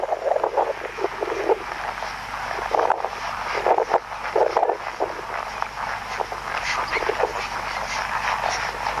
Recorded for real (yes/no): yes